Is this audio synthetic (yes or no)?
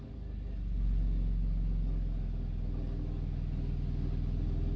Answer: no